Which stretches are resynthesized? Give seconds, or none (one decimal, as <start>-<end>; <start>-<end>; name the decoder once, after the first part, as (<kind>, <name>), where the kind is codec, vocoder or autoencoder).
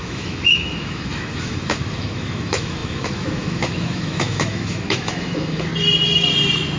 0.0-5.7 (autoencoder, DAC-VAE)